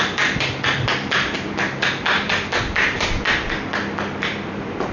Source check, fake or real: real